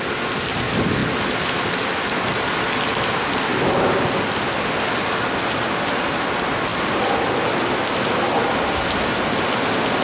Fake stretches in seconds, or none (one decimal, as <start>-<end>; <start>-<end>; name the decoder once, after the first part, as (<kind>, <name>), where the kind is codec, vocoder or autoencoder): none